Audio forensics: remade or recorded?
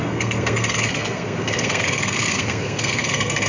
remade